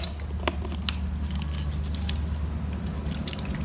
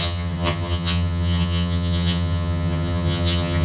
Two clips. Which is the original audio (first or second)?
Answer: first